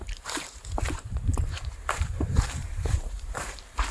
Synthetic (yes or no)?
yes